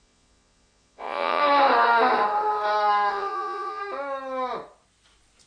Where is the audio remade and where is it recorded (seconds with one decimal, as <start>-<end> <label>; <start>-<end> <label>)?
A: 0.0-1.4 remade; 1.4-3.1 recorded; 3.1-3.8 remade; 3.8-5.5 recorded